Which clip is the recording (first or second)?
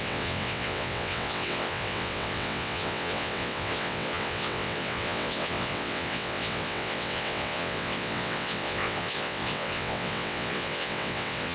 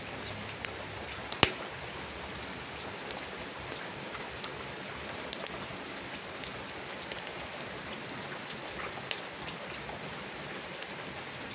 second